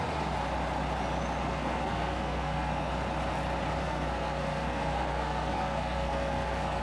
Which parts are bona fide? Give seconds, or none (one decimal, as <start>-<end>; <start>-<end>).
0.0-1.4; 2.9-3.8